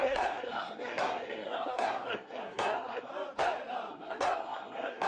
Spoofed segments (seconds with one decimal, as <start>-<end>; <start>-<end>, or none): 0.0-3.1; 3.9-5.1